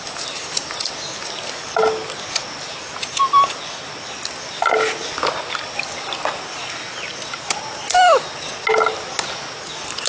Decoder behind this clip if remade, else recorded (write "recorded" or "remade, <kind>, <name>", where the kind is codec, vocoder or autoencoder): recorded